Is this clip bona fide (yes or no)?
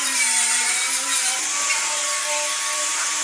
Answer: no